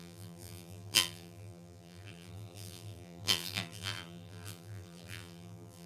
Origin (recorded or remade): remade